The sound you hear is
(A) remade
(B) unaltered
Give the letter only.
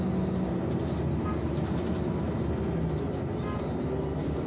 B